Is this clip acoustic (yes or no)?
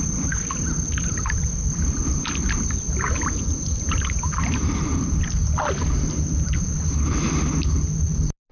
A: yes